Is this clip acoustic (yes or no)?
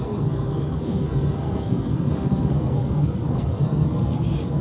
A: no